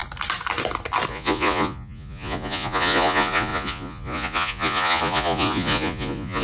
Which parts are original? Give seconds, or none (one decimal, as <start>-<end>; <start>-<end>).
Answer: 0.0-1.1